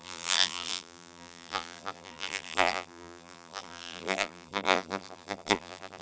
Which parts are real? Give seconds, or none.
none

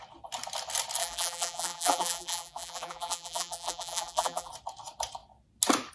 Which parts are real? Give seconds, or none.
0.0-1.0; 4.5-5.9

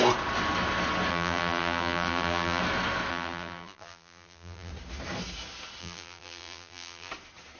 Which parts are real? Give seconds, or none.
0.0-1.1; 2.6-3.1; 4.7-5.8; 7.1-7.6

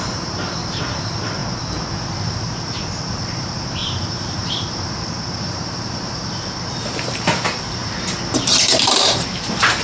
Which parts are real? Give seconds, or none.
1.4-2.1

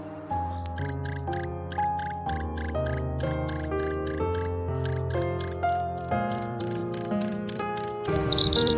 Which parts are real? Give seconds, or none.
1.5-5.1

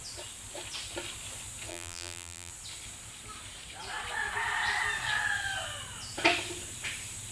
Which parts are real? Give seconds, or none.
0.0-1.7; 2.5-7.3

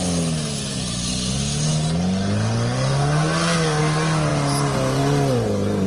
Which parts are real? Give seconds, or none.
0.0-5.9